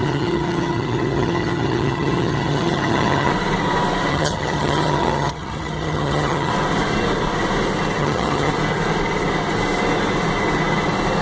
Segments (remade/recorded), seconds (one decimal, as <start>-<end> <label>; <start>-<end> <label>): 0.0-3.3 remade; 3.3-4.1 recorded; 4.1-6.5 remade; 6.5-8.0 recorded; 8.0-8.5 remade; 8.5-11.2 recorded